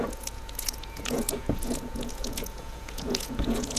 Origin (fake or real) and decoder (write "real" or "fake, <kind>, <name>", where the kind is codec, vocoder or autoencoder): fake, vocoder, Vocos